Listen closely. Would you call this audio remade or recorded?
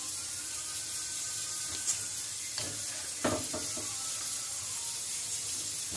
recorded